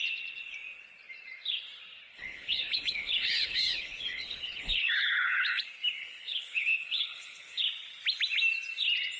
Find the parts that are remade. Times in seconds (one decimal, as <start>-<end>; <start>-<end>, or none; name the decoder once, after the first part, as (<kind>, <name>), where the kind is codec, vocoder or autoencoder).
2.1-5.6 (codec, HILCodec); 6.0-7.6